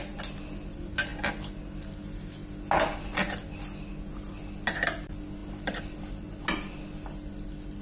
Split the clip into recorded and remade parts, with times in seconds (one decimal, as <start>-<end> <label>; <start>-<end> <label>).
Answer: 0.0-7.8 recorded